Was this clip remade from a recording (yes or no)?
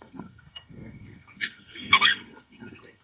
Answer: yes